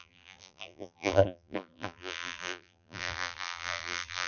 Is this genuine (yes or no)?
no